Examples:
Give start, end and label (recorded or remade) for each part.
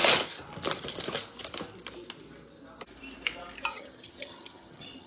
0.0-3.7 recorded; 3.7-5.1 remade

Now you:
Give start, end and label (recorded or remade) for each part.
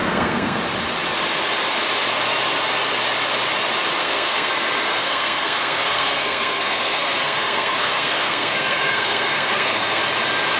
0.0-0.6 remade; 0.6-4.0 recorded; 4.0-4.5 remade; 4.5-5.0 recorded; 5.0-10.0 remade; 10.0-10.6 recorded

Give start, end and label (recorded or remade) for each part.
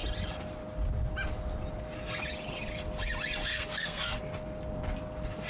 0.0-3.5 recorded; 3.5-4.2 remade; 4.2-5.5 recorded